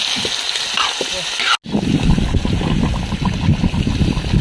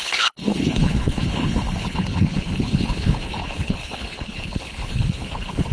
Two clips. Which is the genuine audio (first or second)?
first